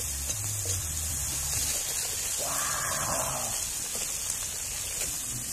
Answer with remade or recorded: recorded